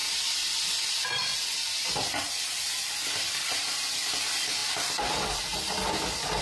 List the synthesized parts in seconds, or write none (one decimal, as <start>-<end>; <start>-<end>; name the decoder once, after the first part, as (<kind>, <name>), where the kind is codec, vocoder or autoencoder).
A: 0.0-0.9 (vocoder, BigVGAN v2); 1.3-2.1; 4.6-5.4